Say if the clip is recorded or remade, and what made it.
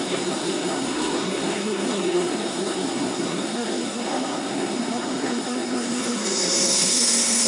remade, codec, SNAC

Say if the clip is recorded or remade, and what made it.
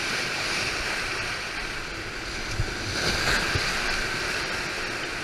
recorded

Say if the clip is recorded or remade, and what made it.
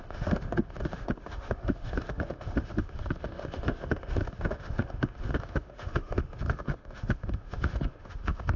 remade, autoencoder, DAC-VAE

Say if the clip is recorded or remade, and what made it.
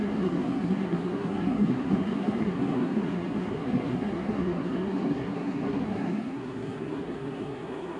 remade, codec, SNAC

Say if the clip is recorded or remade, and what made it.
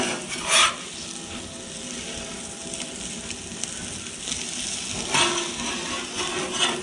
recorded